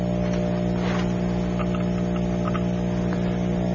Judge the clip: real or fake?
real